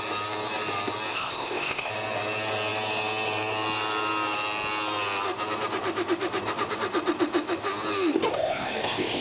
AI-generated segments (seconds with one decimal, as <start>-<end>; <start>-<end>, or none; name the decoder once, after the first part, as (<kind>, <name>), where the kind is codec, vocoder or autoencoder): 1.1-1.9 (codec, ZipCodec); 8.3-9.2

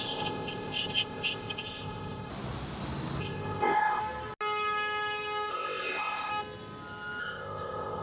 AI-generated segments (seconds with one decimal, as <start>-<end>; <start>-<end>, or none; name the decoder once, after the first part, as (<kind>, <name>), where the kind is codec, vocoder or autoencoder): 0.0-2.3 (codec, ZipCodec); 3.2-4.0; 5.5-6.3; 7.2-8.0

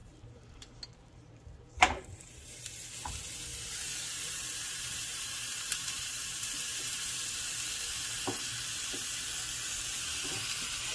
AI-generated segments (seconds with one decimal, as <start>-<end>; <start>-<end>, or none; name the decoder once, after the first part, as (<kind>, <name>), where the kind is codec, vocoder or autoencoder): 0.0-2.6 (vocoder, BigVGAN v2); 3.5-7.2; 9.9-10.9

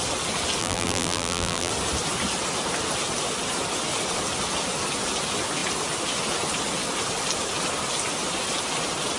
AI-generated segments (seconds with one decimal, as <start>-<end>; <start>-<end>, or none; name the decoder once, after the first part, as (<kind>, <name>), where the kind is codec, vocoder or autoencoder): 0.6-1.7 (vocoder, BigVGAN v2)

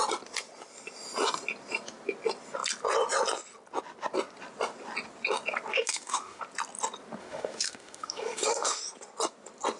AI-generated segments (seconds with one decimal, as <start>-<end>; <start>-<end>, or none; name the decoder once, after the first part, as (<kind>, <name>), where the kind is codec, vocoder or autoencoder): 5.7-6.4 (autoencoder, DAC-VAE); 7.2-8.8

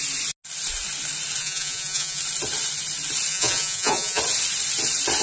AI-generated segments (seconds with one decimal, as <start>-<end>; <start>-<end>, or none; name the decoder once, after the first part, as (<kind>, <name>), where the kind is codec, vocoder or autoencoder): 1.4-2.2 (vocoder, Vocos); 3.3-4.2